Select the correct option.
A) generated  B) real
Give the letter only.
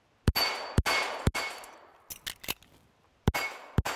B